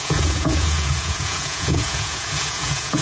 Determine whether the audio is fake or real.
fake